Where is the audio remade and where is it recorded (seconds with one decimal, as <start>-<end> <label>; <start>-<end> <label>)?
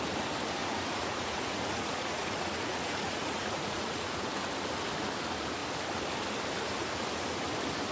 0.0-0.6 recorded; 0.6-4.2 remade; 4.2-7.9 recorded